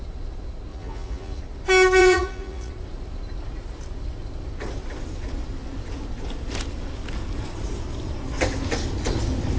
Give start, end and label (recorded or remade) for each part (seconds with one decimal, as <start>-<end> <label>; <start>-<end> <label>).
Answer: 0.0-0.7 recorded; 0.7-1.4 remade; 1.4-2.0 recorded; 2.0-2.7 remade; 2.7-9.6 recorded

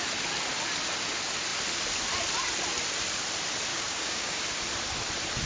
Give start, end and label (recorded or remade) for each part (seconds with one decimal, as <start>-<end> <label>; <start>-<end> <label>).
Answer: 0.0-3.7 recorded; 3.7-4.4 remade; 4.4-5.5 recorded

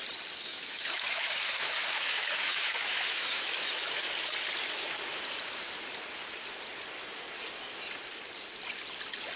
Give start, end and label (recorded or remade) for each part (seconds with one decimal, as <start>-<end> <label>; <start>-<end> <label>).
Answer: 0.0-0.5 recorded; 0.5-4.0 remade; 4.0-9.4 recorded

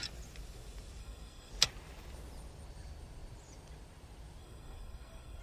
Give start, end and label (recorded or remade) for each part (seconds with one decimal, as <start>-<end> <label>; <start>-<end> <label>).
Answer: 0.0-1.0 recorded; 1.0-1.5 remade; 1.5-4.4 recorded; 4.4-5.4 remade

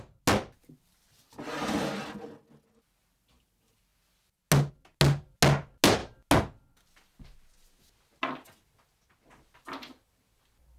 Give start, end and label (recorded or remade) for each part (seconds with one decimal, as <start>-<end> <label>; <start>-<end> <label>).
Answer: 0.0-10.8 recorded

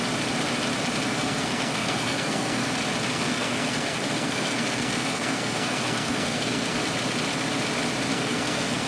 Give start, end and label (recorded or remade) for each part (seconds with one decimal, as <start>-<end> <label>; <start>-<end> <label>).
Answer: 0.0-1.1 recorded; 1.1-2.7 remade; 2.7-3.1 recorded; 3.1-6.8 remade; 6.8-8.1 recorded; 8.1-8.9 remade